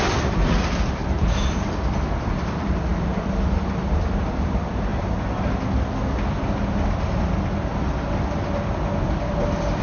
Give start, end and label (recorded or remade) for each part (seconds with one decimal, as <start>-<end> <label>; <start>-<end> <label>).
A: 0.0-4.9 remade; 4.9-9.8 recorded